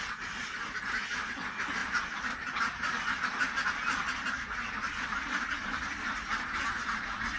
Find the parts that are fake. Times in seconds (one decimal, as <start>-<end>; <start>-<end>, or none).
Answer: 1.8-3.0

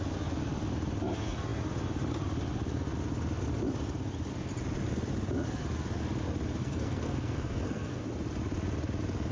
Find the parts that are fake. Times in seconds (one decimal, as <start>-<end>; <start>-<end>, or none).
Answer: 6.6-8.0

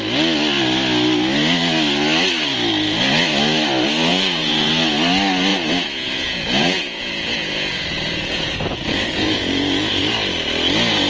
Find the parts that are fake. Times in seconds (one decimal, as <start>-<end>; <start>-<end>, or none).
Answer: 4.1-4.7; 5.5-9.9

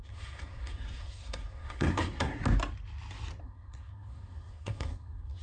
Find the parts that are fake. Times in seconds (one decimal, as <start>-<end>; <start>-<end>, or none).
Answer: 0.0-2.4; 3.4-5.4